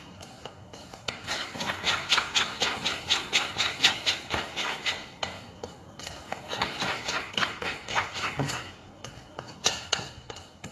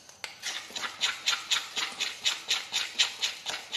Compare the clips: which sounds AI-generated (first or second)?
first